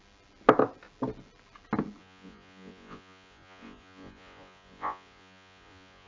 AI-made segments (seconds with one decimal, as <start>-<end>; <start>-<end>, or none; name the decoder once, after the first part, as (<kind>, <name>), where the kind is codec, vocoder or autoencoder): 2.0-6.1 (vocoder, Vocos)